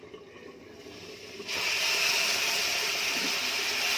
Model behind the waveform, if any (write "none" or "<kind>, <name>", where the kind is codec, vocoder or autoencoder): none